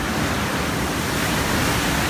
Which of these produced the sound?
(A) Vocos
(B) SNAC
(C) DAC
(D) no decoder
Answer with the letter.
D